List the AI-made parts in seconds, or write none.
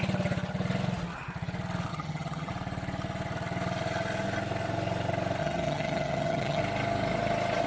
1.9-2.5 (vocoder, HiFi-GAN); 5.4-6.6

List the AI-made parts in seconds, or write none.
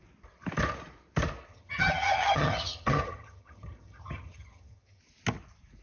1.5-5.0 (vocoder, HiFi-GAN)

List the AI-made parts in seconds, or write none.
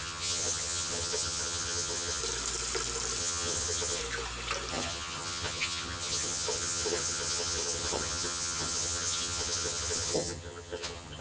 0.0-2.2 (vocoder, HiFi-GAN); 3.2-4.0; 4.7-11.2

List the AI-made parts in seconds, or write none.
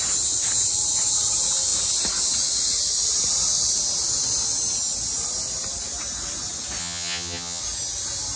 6.8-7.6 (vocoder, HiFi-GAN)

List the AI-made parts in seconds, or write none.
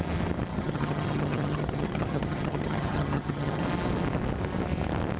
0.5-3.6 (vocoder, HiFi-GAN)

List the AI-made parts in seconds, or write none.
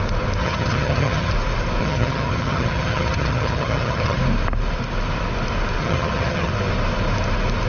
0.4-1.3 (vocoder, HiFi-GAN); 1.8-4.2; 5.8-6.5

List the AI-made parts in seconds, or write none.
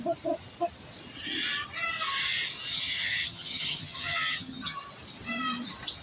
2.7-4.8 (vocoder, HiFi-GAN)